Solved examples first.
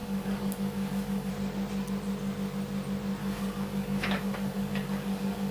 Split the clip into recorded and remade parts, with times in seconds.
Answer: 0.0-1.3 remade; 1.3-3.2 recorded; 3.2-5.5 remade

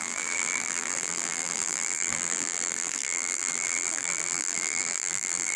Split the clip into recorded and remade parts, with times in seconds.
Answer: 0.0-5.6 remade

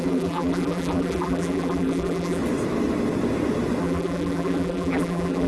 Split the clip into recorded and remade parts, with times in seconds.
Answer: 0.0-2.4 remade; 2.4-3.8 recorded; 3.8-5.5 remade

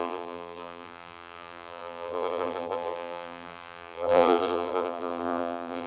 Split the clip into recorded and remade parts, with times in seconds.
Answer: 0.0-5.9 remade

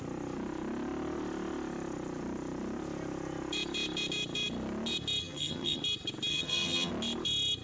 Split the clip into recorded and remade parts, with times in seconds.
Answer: 0.0-5.2 recorded; 5.2-5.8 remade; 5.8-6.3 recorded; 6.3-6.9 remade; 6.9-7.6 recorded

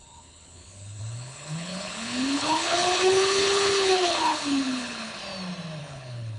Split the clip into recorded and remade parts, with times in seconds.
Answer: 0.0-5.2 remade; 5.2-5.8 recorded; 5.8-6.4 remade

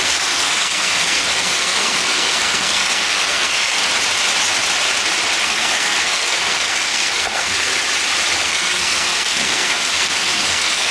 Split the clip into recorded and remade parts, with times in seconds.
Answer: 0.0-3.8 remade; 3.8-5.4 recorded; 5.4-7.7 remade; 7.7-8.4 recorded; 8.4-10.9 remade

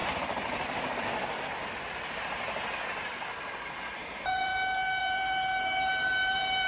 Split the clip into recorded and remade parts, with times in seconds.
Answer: 0.0-4.0 recorded; 4.0-4.5 remade; 4.5-5.0 recorded; 5.0-6.7 remade